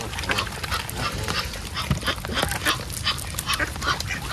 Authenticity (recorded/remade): recorded